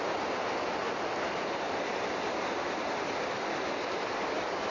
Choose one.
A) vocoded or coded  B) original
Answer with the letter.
B